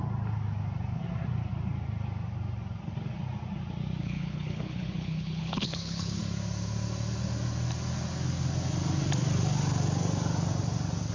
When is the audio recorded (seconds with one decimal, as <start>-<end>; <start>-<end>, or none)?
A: 0.0-4.0; 6.2-11.1